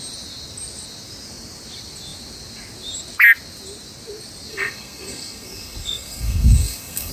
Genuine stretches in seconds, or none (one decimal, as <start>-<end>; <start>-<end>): 0.0-4.5